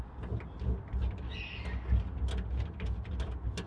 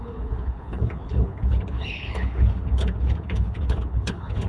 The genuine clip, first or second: first